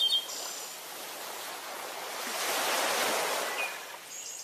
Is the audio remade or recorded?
recorded